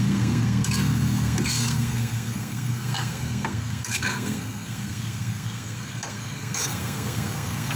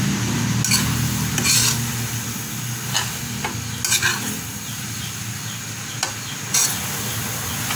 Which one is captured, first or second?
second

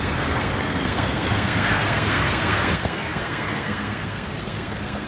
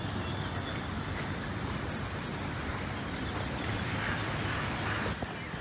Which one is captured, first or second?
second